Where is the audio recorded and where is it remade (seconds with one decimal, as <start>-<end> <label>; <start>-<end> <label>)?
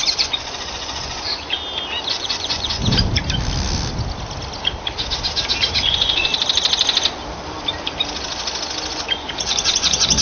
0.0-1.6 remade; 1.6-2.1 recorded; 2.1-2.8 remade; 2.8-5.8 recorded; 5.8-6.3 remade; 6.3-8.9 recorded; 8.9-10.2 remade